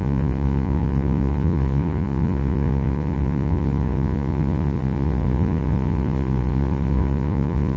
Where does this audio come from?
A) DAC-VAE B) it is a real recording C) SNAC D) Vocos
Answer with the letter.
D